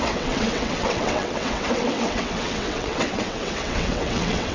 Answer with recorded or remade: remade